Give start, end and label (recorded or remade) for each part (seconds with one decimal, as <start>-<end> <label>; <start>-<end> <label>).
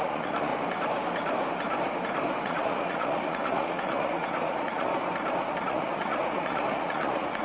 0.0-0.5 remade; 0.5-2.4 recorded; 2.4-4.9 remade; 4.9-5.5 recorded; 5.5-7.4 remade